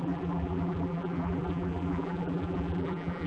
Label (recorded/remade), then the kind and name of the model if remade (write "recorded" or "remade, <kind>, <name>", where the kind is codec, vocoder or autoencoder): remade, vocoder, BigVGAN v2